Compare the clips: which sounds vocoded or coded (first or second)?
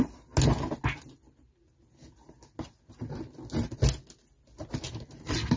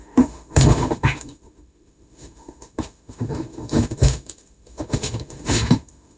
second